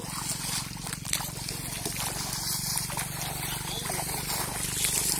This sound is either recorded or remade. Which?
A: recorded